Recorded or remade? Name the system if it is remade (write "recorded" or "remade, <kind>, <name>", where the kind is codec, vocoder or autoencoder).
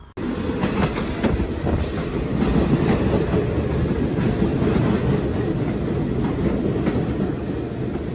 recorded